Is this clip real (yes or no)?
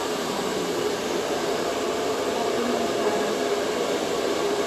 no